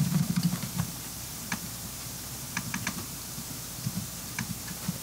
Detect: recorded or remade remade